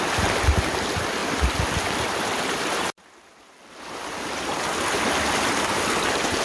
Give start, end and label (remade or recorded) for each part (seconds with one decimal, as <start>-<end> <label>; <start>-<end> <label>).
0.0-6.4 recorded